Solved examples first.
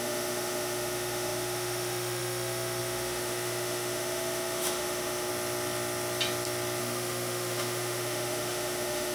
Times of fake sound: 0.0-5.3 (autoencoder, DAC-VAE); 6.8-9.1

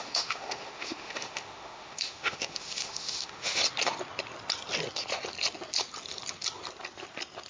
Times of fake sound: 0.0-3.6 (autoencoder, DAC-VAE)

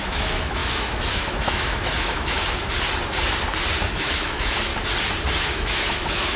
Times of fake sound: 0.0-2.6 (autoencoder, DAC-VAE); 3.9-4.7; 5.4-6.4